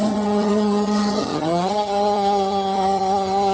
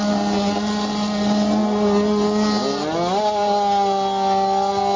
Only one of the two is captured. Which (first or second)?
second